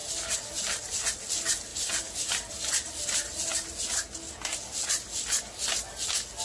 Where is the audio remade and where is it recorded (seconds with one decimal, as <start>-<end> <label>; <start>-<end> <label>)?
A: 0.0-1.7 recorded; 1.7-2.6 remade; 2.6-6.4 recorded